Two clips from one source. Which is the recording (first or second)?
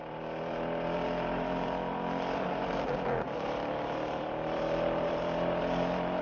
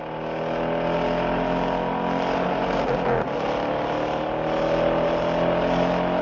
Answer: second